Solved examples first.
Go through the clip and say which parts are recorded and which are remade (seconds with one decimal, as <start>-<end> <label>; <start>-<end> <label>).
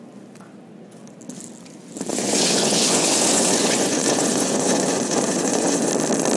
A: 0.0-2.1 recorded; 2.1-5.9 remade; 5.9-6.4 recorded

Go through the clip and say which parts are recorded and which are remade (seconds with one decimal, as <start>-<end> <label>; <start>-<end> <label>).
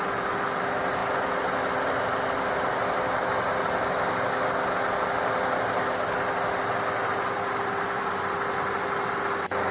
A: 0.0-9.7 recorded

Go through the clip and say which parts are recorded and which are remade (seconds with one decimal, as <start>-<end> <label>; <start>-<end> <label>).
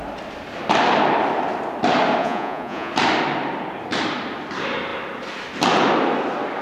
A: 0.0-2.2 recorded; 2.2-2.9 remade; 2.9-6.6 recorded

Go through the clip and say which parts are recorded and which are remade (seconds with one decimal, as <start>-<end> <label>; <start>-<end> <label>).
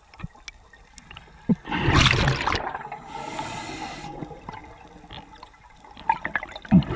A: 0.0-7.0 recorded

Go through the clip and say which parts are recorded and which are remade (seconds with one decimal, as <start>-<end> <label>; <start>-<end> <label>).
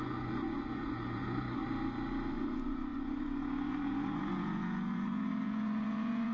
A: 0.0-1.6 remade; 1.6-2.3 recorded; 2.3-6.3 remade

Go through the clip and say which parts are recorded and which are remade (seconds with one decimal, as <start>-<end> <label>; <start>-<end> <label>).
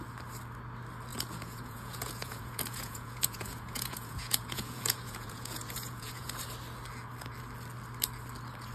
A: 0.0-1.1 recorded; 1.1-6.3 remade; 6.3-8.7 recorded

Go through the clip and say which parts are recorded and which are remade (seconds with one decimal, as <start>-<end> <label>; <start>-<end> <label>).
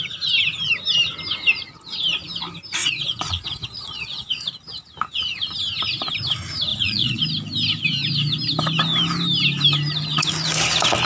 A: 0.0-2.8 recorded; 2.8-4.5 remade; 4.5-6.7 recorded; 6.7-7.2 remade; 7.2-11.1 recorded